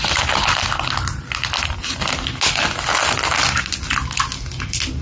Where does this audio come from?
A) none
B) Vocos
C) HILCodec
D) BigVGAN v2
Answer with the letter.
A